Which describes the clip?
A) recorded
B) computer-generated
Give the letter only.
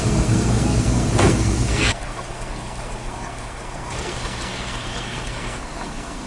B